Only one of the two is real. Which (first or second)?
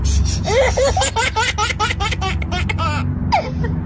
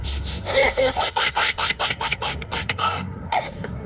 first